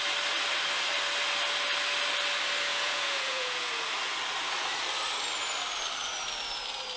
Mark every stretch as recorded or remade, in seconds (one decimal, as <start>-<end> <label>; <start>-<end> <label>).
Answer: 0.0-2.7 recorded; 2.7-3.7 remade; 3.7-7.0 recorded